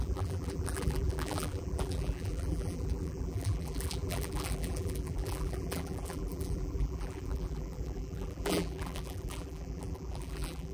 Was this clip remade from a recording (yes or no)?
yes